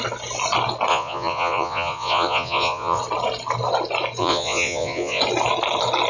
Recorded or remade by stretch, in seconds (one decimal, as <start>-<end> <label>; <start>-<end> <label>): 0.0-0.9 recorded; 0.9-3.0 remade; 3.0-4.2 recorded; 4.2-5.2 remade; 5.2-6.1 recorded